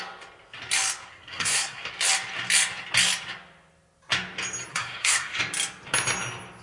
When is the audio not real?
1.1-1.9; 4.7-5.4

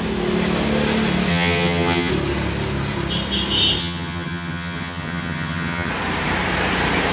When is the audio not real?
1.3-2.1; 3.8-5.9

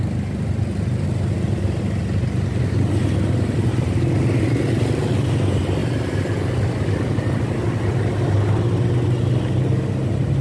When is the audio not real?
none

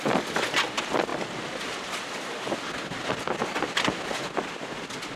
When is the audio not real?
none

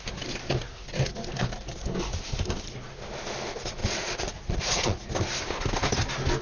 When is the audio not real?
3.8-5.1

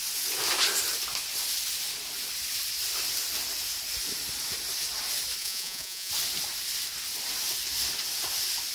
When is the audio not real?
5.4-6.1

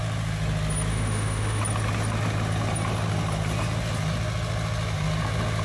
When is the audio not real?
0.9-1.6